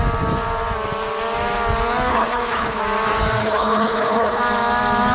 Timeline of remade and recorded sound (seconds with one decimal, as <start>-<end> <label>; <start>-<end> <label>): 0.0-2.1 recorded; 2.1-2.8 remade; 2.8-3.4 recorded; 3.4-4.4 remade; 4.4-5.1 recorded